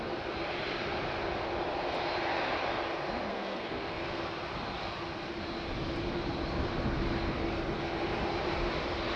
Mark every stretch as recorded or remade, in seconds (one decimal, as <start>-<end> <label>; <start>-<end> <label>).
0.0-3.3 recorded; 3.3-4.2 remade; 4.2-9.2 recorded